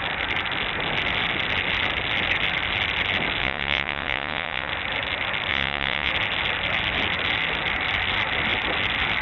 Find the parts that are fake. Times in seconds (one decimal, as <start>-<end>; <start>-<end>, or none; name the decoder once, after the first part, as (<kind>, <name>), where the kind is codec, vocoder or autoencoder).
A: 3.4-4.7 (vocoder, WaveNeXt); 5.5-6.1